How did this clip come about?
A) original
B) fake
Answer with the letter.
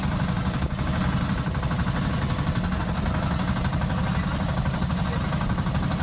A